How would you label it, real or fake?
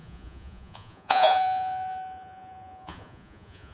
fake